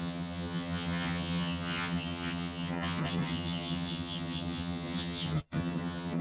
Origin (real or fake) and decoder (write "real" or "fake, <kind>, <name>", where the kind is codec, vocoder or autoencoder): fake, vocoder, HiFi-GAN